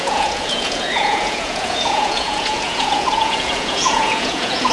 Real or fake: fake